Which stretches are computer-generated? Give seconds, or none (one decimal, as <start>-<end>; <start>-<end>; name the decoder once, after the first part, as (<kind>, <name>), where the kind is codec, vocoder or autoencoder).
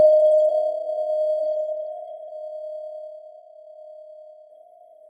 0.0-0.5 (codec, HILCodec); 1.4-2.3; 4.5-5.1